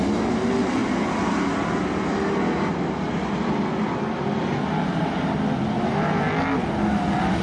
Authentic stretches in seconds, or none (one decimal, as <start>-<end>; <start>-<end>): 0.0-7.4